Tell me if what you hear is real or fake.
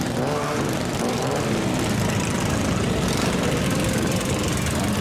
real